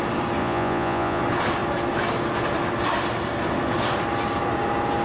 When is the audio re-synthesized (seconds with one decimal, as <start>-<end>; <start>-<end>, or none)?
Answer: 0.4-1.2